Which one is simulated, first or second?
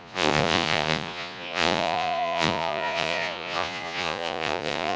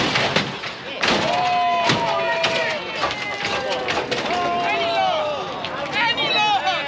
first